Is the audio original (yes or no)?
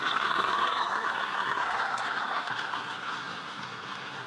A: no